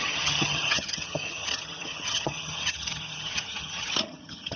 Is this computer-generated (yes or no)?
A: yes